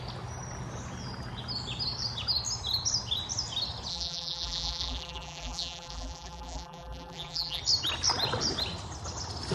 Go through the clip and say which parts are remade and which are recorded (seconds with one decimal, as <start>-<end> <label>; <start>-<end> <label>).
0.0-3.9 recorded; 3.9-7.6 remade; 7.6-9.5 recorded